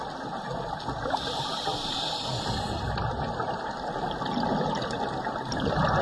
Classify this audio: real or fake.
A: real